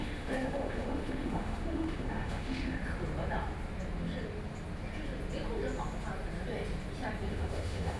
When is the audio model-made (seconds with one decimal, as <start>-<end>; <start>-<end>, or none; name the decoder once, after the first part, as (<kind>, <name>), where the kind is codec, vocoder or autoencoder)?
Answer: 0.0-2.8 (autoencoder, DAC-VAE); 7.3-8.0